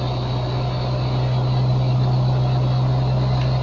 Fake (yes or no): no